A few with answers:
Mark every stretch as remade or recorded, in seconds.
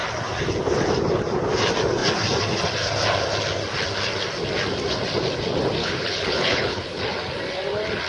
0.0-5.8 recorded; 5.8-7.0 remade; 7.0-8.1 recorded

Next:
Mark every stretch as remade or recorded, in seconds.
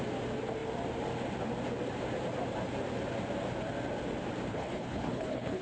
0.0-4.5 recorded; 4.5-5.6 remade